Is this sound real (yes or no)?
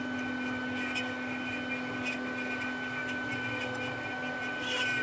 yes